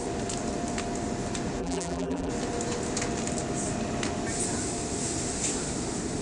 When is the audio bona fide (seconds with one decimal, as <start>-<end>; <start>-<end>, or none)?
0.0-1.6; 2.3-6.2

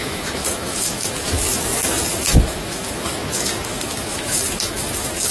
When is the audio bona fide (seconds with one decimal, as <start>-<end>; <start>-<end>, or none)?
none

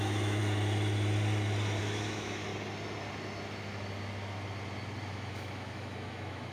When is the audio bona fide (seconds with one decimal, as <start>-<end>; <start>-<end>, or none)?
0.4-1.8; 2.5-5.1

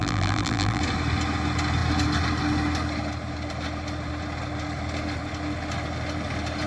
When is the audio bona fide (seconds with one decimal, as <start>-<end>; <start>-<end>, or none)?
0.8-6.7

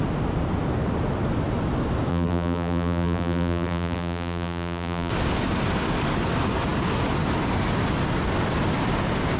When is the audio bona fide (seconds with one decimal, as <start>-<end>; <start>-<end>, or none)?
0.0-2.1; 5.1-9.4